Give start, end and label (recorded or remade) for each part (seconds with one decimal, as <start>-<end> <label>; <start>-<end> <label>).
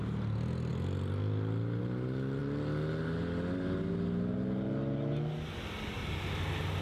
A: 0.0-6.8 recorded